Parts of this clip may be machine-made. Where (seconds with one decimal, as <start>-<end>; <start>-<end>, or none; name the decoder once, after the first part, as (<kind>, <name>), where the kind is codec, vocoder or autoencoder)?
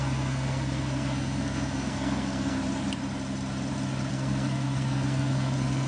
0.0-2.6 (codec, SNAC); 4.1-5.9